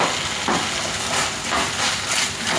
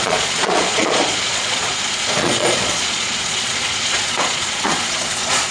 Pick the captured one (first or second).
first